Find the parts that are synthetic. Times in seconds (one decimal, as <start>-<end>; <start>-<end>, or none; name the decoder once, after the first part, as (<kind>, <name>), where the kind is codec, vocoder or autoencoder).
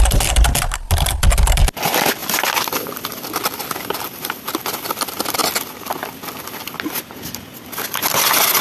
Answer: none